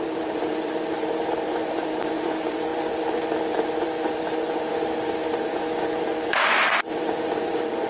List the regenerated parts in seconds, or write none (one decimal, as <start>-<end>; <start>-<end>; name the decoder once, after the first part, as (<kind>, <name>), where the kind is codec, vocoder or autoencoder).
0.0-7.9 (vocoder, BigVGAN v2)